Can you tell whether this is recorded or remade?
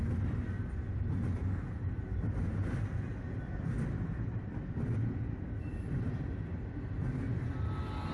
recorded